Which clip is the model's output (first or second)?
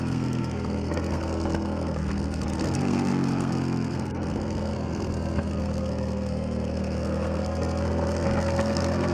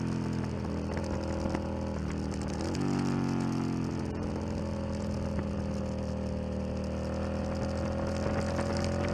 first